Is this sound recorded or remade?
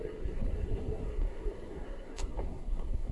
remade